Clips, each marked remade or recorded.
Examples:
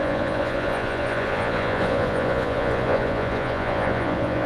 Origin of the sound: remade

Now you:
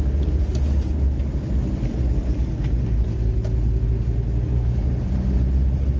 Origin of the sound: recorded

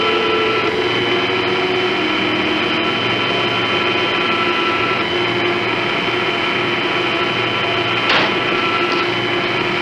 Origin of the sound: recorded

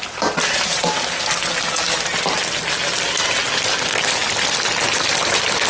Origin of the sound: recorded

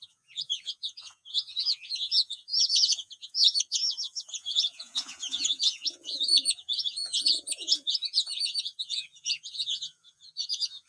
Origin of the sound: remade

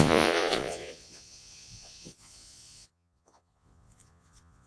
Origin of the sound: remade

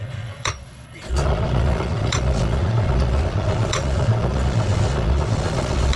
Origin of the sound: remade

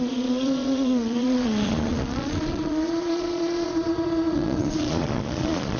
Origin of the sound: remade